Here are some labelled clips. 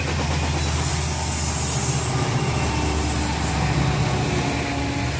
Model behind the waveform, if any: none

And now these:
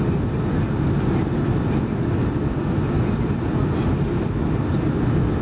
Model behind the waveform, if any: none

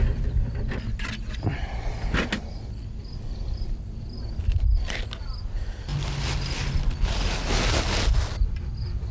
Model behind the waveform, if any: none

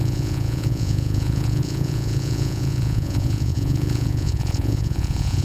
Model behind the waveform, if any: vocoder, Vocos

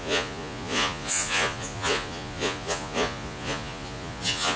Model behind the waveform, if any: vocoder, Vocos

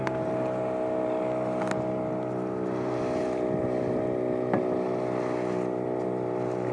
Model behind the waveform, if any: none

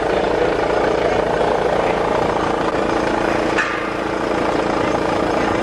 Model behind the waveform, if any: none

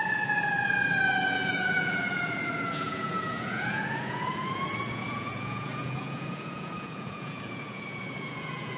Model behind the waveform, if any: vocoder, Vocos